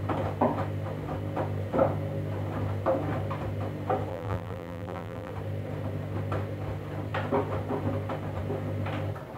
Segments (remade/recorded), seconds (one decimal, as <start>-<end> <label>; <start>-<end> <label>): 0.0-4.1 recorded; 4.1-5.3 remade; 5.3-9.4 recorded